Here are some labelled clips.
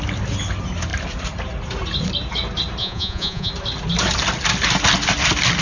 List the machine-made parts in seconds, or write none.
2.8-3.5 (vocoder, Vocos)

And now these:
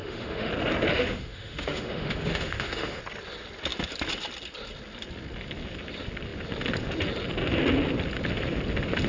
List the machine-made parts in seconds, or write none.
0.0-0.5 (autoencoder, DAC-VAE); 0.9-3.0

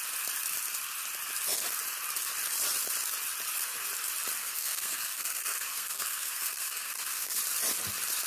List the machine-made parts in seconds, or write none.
4.4-7.4 (codec, SNAC)